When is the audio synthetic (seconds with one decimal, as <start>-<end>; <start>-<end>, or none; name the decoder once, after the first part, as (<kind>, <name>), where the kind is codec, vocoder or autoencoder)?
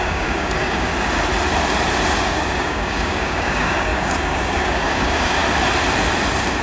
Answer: 0.0-0.9 (codec, DAC); 2.2-5.4